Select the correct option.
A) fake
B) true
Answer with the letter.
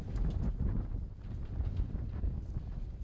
A